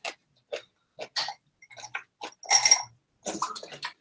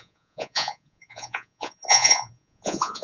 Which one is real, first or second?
first